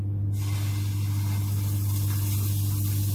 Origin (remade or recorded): recorded